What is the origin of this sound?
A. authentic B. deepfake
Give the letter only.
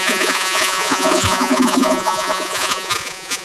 B